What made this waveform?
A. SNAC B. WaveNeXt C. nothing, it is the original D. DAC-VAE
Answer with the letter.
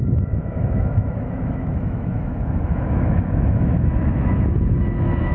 D